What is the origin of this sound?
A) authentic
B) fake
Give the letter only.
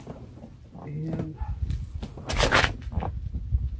A